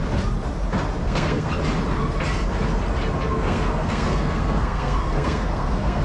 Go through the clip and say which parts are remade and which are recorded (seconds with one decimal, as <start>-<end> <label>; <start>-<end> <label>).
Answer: 0.0-1.0 recorded; 1.0-1.5 remade; 1.5-3.3 recorded; 3.3-6.0 remade